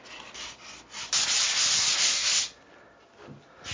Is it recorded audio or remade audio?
recorded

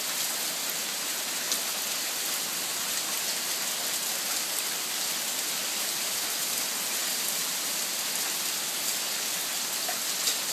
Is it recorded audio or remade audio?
recorded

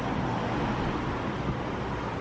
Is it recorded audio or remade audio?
recorded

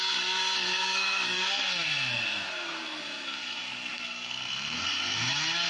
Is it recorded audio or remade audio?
remade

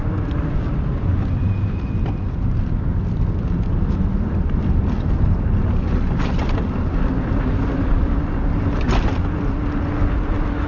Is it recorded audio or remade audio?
recorded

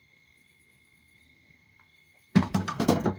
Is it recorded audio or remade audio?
remade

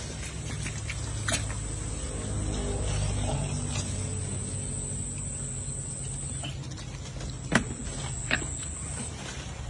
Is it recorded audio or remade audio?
recorded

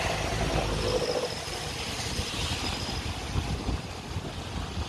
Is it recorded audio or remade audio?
recorded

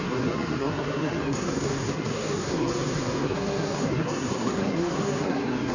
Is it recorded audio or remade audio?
remade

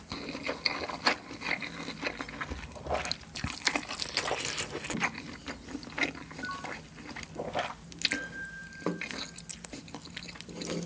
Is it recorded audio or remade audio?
recorded